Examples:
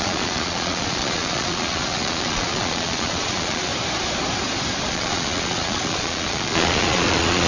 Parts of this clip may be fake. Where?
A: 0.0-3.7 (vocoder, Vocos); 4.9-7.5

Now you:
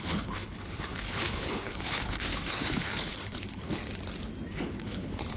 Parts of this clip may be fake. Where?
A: 0.0-3.8 (codec, HILCodec); 4.5-5.4

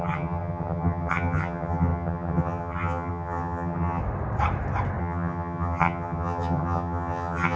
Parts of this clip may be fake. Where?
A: 0.0-4.0 (vocoder, HiFi-GAN); 5.0-7.6

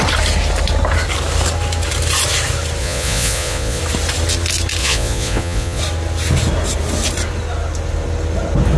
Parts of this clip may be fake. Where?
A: 2.8-3.8 (vocoder, Vocos); 4.8-5.8

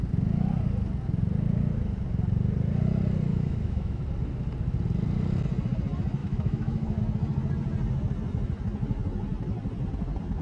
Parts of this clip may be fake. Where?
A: 3.3-4.0 (autoencoder, DAC-VAE); 6.2-7.0

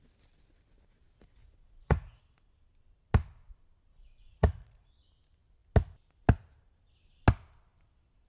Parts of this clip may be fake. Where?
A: 1.4-2.2 (vocoder, Vocos); 3.9-4.9

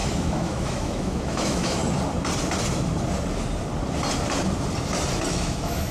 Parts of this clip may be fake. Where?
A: 0.0-1.8 (autoencoder, DAC-VAE); 5.3-5.9